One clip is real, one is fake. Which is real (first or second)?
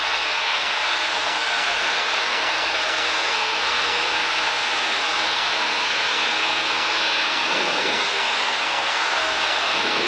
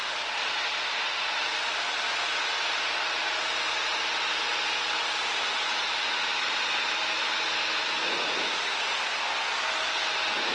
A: second